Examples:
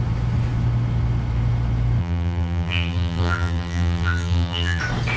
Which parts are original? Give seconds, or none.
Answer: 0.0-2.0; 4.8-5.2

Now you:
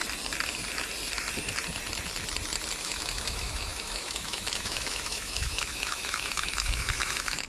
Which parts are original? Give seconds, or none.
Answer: 0.0-2.8

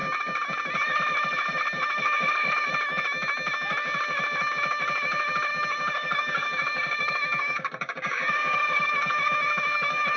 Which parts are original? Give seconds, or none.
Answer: 0.0-5.5

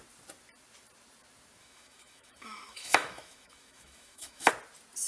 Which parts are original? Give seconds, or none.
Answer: 0.0-1.6; 4.5-5.1

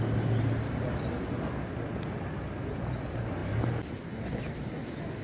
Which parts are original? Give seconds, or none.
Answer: 0.0-5.2

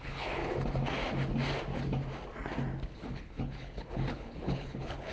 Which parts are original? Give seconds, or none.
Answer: 0.4-3.1

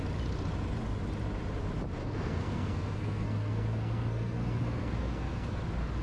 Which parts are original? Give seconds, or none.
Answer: 0.0-2.0; 5.6-6.0